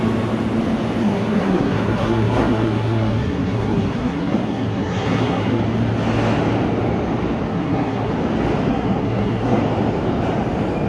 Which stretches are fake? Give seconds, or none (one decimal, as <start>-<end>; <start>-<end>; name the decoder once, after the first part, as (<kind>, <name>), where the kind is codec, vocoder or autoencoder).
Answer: 1.0-5.6 (codec, SNAC); 7.5-8.1; 8.7-9.6